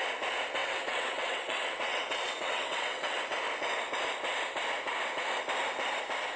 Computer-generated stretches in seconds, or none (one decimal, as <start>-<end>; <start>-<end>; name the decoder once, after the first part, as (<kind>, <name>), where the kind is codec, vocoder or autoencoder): 0.6-3.2 (vocoder, WaveNeXt)